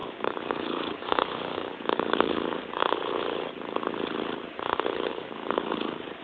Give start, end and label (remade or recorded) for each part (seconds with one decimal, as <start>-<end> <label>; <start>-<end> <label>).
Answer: 0.0-2.8 remade; 2.8-5.1 recorded; 5.1-6.2 remade